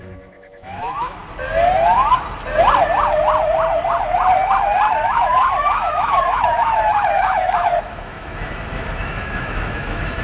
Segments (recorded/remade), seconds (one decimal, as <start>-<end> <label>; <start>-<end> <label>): 0.0-1.2 remade; 1.2-4.9 recorded; 4.9-10.2 remade